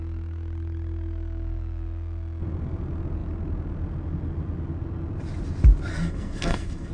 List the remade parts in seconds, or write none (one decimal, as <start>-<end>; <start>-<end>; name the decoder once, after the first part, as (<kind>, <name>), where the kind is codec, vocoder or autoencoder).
5.9-6.9 (codec, SNAC)